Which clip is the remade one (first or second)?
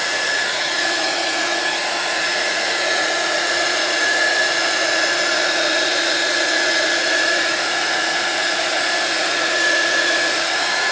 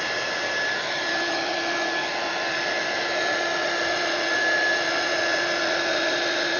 first